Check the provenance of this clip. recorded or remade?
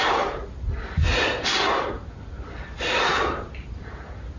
recorded